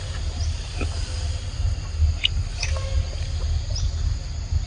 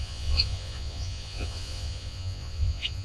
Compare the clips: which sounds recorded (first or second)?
first